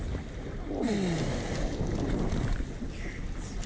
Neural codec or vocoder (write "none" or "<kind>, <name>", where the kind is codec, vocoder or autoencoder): none